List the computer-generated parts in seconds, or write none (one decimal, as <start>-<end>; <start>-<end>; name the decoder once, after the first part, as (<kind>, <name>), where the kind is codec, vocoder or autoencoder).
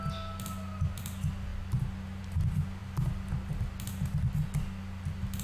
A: none